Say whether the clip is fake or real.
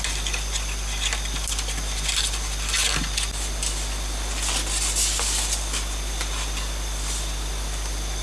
real